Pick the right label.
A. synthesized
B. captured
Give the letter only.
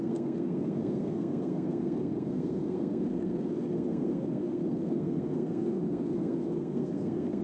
A